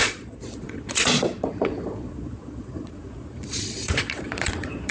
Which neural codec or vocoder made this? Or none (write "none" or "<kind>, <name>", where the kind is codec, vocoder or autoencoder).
vocoder, Vocos